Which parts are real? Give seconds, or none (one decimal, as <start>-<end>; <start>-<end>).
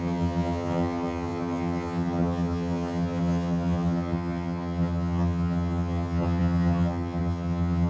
none